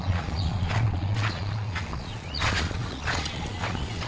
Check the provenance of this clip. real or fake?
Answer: fake